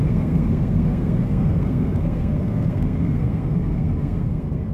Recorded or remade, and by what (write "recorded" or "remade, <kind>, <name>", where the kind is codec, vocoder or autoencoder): remade, codec, SNAC